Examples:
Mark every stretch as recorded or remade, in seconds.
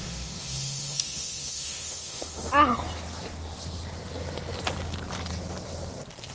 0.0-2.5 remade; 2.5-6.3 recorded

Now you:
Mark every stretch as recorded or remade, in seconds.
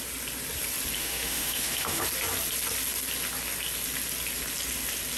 0.0-1.0 recorded; 1.0-2.0 remade; 2.0-5.2 recorded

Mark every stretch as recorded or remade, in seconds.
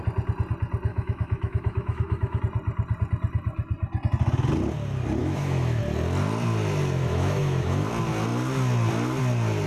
0.0-0.9 recorded; 0.9-2.4 remade; 2.4-5.2 recorded; 5.2-5.8 remade; 5.8-7.0 recorded; 7.0-7.9 remade; 7.9-9.7 recorded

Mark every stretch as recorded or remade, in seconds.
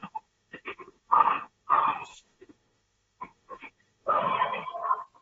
0.0-1.7 remade; 1.7-2.1 recorded; 2.1-4.2 remade; 4.2-5.2 recorded